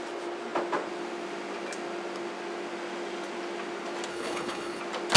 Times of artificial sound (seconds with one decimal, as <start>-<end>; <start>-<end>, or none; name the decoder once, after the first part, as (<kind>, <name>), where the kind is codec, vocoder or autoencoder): 4.1-4.8 (codec, HILCodec)